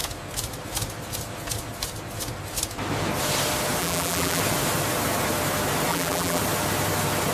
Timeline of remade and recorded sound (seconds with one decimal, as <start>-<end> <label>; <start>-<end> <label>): 0.0-3.8 recorded; 3.8-4.4 remade; 4.4-5.9 recorded; 5.9-6.4 remade; 6.4-7.3 recorded